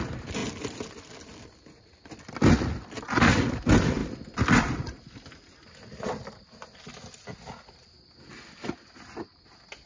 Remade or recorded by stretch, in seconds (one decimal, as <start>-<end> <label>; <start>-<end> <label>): 0.0-9.9 recorded